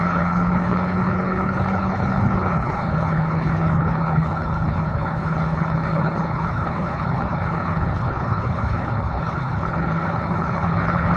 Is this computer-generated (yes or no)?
yes